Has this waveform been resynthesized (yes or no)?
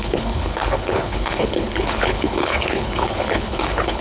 yes